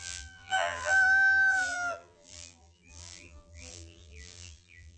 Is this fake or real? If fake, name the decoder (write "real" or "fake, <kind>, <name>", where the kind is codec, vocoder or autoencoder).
fake, vocoder, BigVGAN v2